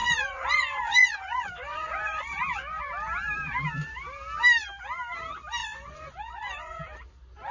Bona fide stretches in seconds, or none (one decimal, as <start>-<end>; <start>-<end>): 2.8-5.6; 6.8-7.5